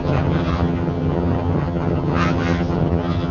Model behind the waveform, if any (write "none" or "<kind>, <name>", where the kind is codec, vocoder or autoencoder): vocoder, HiFi-GAN